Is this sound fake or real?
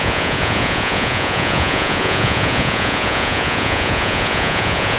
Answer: fake